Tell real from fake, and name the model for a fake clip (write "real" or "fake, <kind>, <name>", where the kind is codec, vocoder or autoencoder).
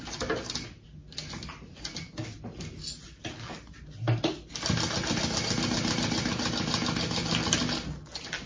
real